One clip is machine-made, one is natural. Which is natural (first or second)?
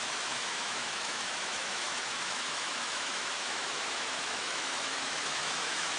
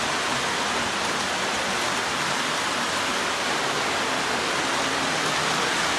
second